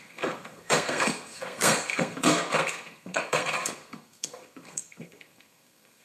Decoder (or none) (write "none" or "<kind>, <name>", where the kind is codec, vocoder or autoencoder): codec, SNAC